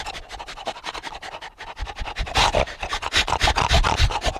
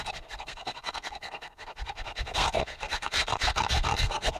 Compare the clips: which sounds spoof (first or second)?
second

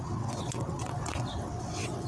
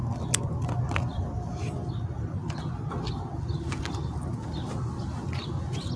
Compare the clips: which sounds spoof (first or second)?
first